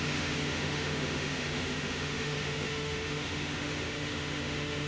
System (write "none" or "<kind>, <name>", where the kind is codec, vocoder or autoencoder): autoencoder, DAC-VAE